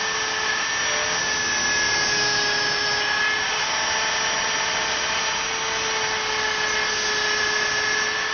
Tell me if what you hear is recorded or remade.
recorded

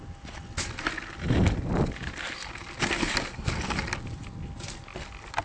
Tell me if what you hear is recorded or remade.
recorded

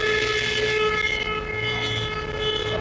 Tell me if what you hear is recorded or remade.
recorded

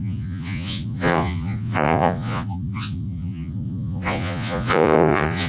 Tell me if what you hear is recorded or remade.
remade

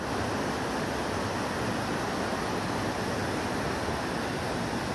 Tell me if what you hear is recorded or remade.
recorded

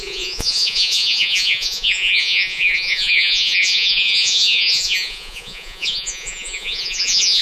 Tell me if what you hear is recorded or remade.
remade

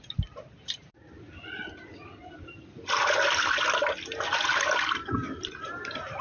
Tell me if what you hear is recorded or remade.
recorded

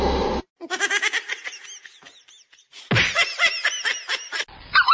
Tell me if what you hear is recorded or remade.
recorded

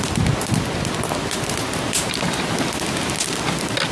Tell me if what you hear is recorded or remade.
recorded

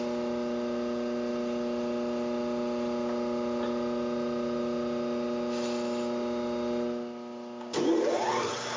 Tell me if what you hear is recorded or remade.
recorded